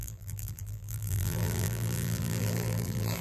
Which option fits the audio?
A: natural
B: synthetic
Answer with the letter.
B